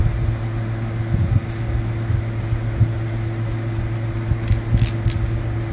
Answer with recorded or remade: recorded